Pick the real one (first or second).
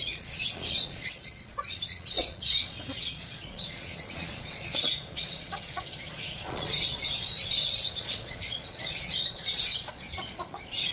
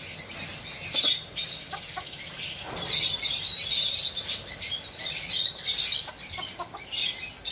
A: second